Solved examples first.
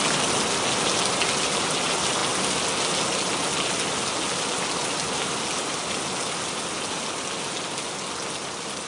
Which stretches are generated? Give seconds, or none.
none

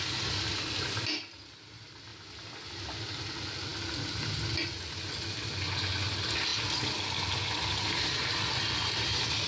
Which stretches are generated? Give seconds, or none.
none

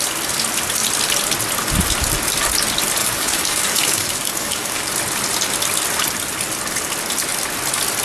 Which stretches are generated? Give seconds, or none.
3.0-4.9 (codec, DAC)

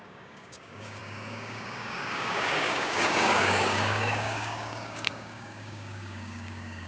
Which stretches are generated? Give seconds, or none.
0.0-6.9 (codec, DAC)

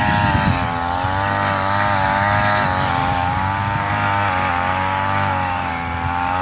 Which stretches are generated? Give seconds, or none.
3.0-3.9 (codec, DAC); 4.7-5.7

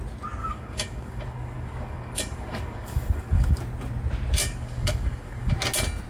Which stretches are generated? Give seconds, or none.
0.4-3.6 (codec, DAC); 4.4-5.5

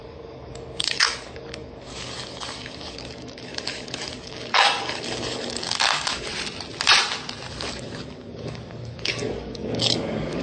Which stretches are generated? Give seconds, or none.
0.0-6.3 (codec, DAC); 7.5-10.4

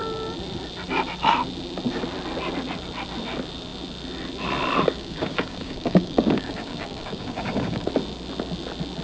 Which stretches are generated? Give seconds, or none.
5.0-7.9 (codec, DAC)